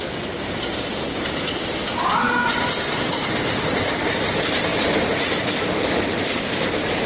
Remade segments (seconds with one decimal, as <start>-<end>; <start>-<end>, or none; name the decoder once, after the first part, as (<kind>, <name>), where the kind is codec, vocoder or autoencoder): none